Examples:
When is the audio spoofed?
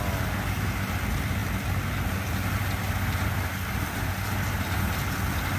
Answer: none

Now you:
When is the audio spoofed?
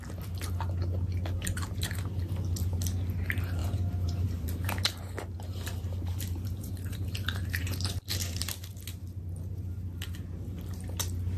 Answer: 3.6-8.8 (vocoder, BigVGAN v2)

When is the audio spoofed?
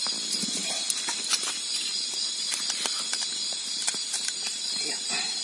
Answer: 0.0-5.4 (vocoder, BigVGAN v2)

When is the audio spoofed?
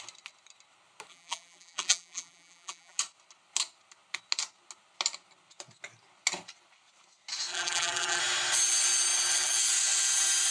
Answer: 1.1-3.0 (vocoder, BigVGAN v2); 7.5-8.2